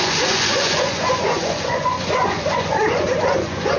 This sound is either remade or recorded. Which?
remade